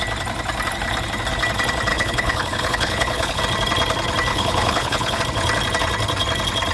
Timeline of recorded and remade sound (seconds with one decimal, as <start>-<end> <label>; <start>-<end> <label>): 0.0-1.9 recorded; 1.9-3.4 remade; 3.4-4.3 recorded; 4.3-5.2 remade; 5.2-6.7 recorded